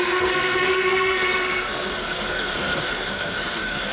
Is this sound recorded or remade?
remade